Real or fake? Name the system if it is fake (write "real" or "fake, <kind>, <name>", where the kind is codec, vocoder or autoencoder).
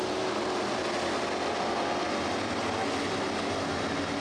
real